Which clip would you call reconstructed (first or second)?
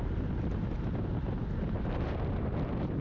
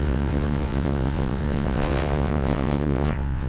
second